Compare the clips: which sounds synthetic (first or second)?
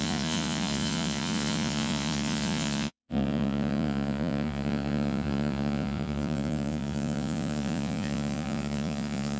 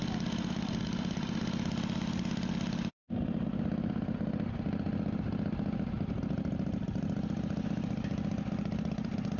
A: first